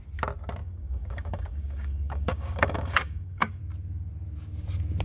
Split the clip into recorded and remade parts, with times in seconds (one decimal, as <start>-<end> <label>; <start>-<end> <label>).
0.0-0.6 recorded; 0.6-3.6 remade; 3.6-5.0 recorded